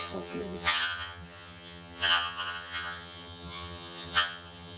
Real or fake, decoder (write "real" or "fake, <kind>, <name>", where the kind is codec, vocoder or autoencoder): fake, vocoder, HiFi-GAN